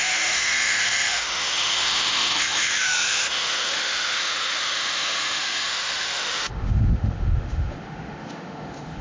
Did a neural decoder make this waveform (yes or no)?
yes